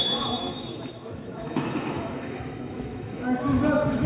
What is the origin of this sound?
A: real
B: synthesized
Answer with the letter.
B